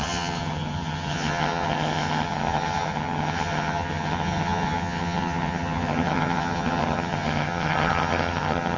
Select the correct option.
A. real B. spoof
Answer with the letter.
B